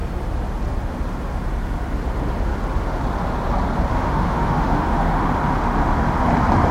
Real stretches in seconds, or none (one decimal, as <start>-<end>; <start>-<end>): 0.0-3.9; 5.2-6.7